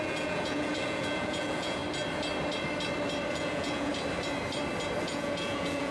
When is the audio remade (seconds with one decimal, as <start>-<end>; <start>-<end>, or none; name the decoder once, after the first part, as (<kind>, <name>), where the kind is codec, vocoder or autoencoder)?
0.0-1.8 (vocoder, Vocos); 3.3-3.9; 5.0-5.9